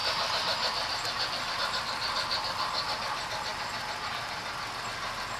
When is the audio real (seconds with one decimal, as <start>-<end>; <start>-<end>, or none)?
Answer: 0.0-5.4